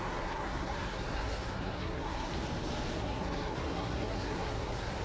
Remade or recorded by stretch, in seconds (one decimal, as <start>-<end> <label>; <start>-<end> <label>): 0.0-2.3 remade; 2.3-3.0 recorded; 3.0-5.0 remade

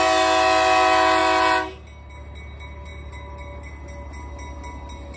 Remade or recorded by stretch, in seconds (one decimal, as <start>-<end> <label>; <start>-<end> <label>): 0.0-5.2 recorded

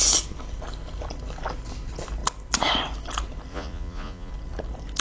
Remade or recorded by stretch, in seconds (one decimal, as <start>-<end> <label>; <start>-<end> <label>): 0.0-3.5 recorded; 3.5-4.3 remade; 4.3-5.0 recorded

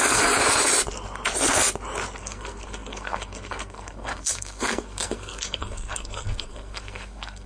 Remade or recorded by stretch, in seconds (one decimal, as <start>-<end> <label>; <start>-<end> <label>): 0.0-0.4 remade; 0.4-2.2 recorded; 2.2-7.5 remade

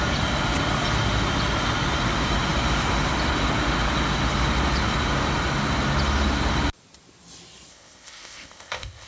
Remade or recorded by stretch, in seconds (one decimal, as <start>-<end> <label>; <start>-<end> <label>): 0.0-7.7 recorded; 7.7-9.1 remade

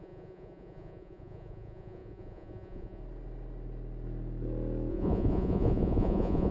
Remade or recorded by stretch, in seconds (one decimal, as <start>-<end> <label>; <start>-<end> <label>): 0.0-3.0 remade; 3.0-4.9 recorded; 4.9-6.5 remade